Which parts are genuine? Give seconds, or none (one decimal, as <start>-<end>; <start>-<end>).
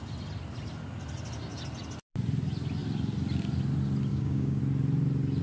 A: 0.0-4.1; 4.6-5.4